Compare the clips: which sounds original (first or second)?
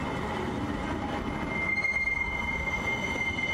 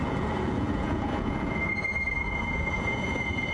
first